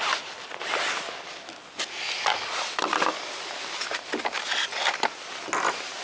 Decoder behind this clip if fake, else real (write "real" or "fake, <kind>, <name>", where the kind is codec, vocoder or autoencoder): real